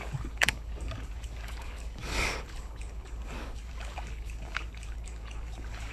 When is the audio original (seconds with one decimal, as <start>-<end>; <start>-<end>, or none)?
none